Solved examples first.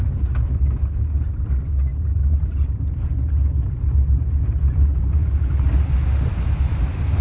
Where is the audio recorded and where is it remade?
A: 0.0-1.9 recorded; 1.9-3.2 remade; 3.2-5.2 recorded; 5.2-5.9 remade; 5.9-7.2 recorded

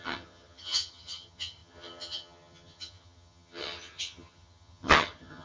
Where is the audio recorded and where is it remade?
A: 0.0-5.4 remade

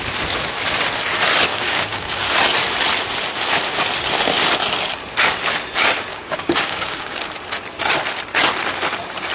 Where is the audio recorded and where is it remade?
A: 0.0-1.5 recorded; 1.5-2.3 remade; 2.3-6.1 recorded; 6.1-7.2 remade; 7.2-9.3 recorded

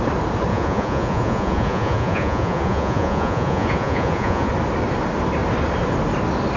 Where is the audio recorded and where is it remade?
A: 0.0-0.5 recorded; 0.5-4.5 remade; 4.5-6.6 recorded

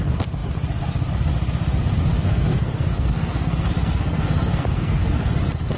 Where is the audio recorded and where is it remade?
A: 0.0-2.1 recorded; 2.1-5.3 remade; 5.3-5.8 recorded

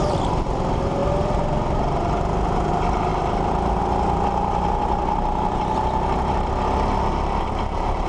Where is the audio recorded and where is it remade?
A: 0.0-8.1 recorded